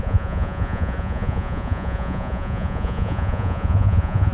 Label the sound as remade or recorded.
remade